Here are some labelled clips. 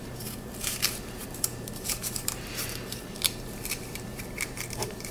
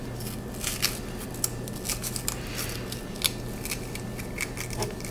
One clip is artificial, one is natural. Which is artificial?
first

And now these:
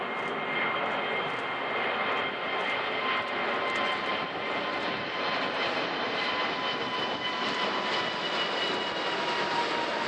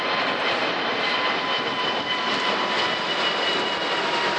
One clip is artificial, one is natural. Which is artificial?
second